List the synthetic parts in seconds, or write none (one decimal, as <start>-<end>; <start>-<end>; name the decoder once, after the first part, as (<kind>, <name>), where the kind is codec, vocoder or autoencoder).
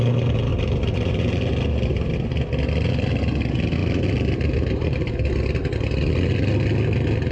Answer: 0.5-1.5 (vocoder, BigVGAN v2); 3.8-5.1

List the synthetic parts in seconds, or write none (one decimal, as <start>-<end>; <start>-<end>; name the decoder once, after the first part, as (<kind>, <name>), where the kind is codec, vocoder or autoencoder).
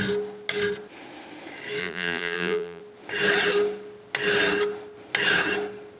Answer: 1.8-2.8 (vocoder, BigVGAN v2)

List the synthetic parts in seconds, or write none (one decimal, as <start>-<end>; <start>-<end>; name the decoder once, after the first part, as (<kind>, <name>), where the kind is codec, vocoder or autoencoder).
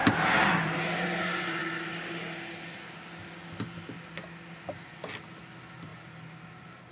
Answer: none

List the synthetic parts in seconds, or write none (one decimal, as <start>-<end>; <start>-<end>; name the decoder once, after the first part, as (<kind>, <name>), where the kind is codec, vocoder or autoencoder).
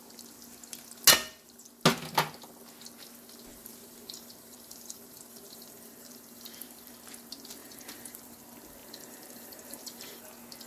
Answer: 3.5-6.9 (vocoder, BigVGAN v2); 7.6-8.4; 8.8-10.2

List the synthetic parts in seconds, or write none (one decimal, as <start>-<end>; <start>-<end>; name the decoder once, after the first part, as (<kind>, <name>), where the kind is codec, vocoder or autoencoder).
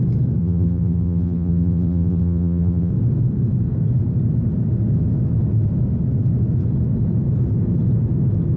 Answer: 0.4-2.9 (vocoder, BigVGAN v2)